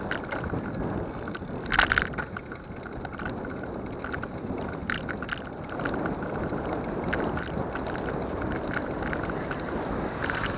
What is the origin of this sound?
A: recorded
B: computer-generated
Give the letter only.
A